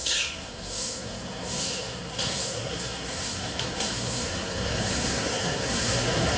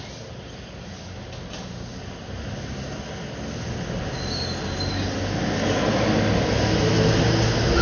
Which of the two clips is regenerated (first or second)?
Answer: first